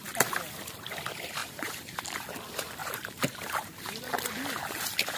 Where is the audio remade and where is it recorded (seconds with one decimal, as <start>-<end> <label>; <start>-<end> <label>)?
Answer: 0.0-1.4 recorded; 1.4-2.0 remade; 2.0-2.8 recorded; 2.8-4.0 remade; 4.0-5.2 recorded